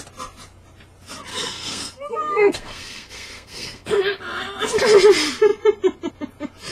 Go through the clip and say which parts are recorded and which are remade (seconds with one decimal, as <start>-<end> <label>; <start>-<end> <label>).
0.0-1.3 recorded; 1.3-4.2 remade; 4.2-6.7 recorded